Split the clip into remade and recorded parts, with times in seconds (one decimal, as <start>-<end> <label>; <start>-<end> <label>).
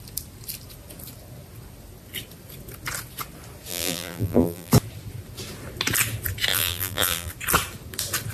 0.0-3.7 recorded; 3.7-4.7 remade; 4.7-6.5 recorded; 6.5-7.3 remade; 7.3-8.3 recorded